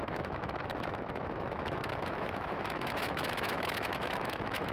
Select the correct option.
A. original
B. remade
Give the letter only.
B